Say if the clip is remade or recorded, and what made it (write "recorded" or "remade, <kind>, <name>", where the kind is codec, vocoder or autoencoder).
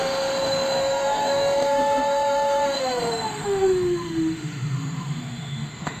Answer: remade, autoencoder, DAC-VAE